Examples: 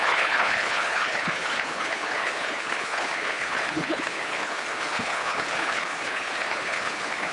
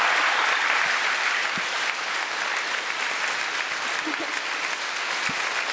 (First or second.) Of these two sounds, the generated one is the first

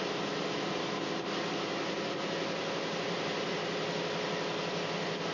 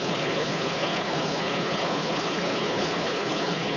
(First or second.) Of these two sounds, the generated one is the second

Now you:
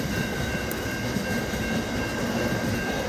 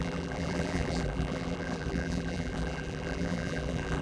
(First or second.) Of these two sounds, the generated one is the second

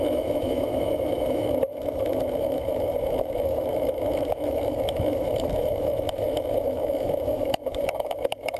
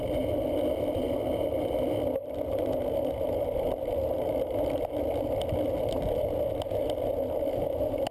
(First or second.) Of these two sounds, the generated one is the first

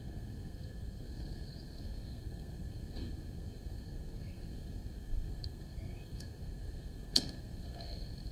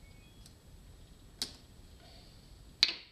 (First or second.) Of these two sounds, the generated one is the first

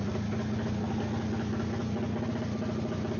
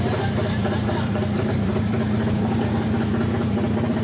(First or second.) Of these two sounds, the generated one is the second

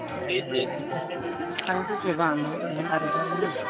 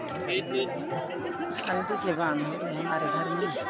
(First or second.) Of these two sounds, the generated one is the first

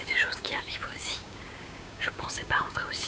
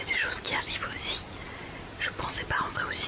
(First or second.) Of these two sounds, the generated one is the first